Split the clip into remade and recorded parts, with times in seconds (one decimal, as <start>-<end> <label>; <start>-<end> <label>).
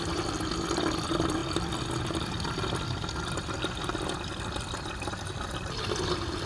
0.0-6.5 recorded